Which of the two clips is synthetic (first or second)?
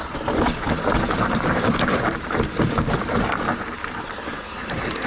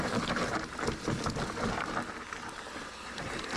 first